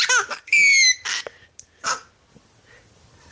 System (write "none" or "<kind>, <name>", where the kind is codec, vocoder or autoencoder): none